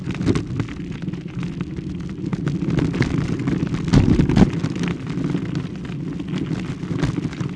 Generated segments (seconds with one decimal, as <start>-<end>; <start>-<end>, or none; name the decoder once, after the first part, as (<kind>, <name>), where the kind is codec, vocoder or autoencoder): none